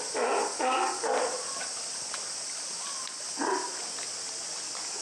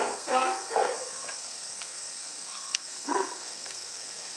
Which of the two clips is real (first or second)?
first